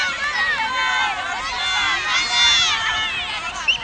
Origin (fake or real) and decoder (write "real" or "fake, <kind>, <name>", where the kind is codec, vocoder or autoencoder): real